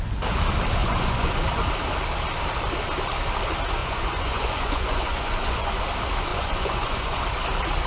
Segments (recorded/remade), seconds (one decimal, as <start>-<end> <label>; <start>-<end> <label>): 0.0-0.8 recorded; 0.8-1.3 remade; 1.3-3.8 recorded; 3.8-5.8 remade; 5.8-6.3 recorded; 6.3-7.2 remade; 7.2-7.9 recorded